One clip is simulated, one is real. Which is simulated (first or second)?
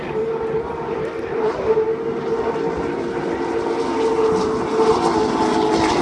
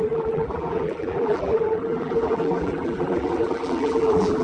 second